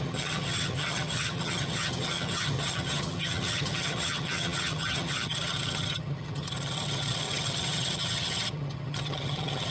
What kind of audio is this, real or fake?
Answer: fake